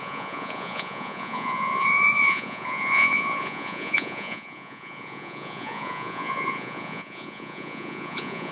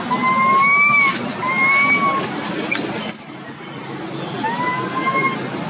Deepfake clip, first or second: first